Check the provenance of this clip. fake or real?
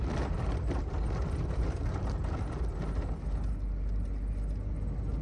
real